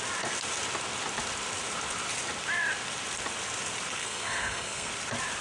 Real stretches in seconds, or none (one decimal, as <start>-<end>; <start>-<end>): 0.0-4.0; 4.9-5.4